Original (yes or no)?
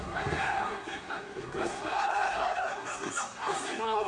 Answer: no